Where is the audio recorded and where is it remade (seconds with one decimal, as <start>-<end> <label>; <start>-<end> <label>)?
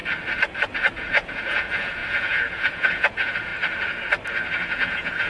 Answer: 0.0-0.9 recorded; 0.9-3.5 remade; 3.5-4.5 recorded; 4.5-5.3 remade